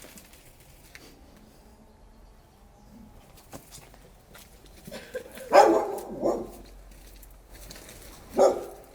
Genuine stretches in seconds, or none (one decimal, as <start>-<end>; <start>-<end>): 0.0-4.6; 5.7-8.9